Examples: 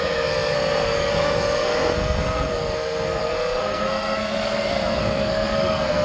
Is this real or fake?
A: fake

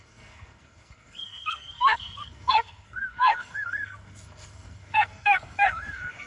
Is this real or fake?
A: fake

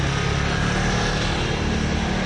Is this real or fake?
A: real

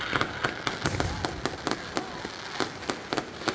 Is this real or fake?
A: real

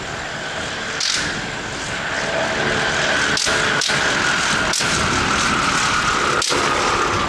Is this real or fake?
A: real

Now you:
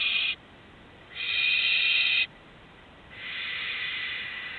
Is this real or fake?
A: real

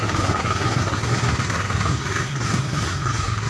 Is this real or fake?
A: fake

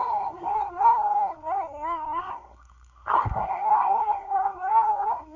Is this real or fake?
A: fake